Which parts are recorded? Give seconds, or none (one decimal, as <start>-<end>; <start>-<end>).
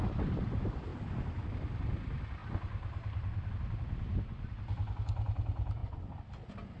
0.0-6.8